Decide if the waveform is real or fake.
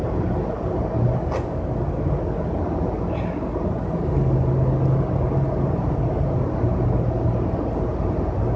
real